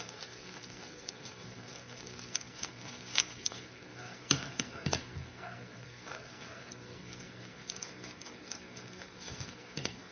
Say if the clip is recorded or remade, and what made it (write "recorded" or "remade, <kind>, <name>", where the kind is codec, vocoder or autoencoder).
remade, codec, SNAC